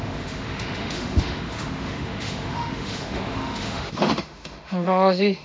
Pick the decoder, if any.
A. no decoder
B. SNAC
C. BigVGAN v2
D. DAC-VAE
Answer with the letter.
D